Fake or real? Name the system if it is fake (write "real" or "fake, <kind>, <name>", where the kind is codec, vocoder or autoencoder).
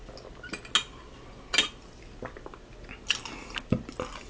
real